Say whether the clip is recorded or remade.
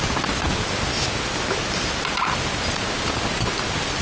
recorded